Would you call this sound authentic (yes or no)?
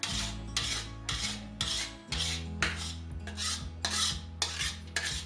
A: yes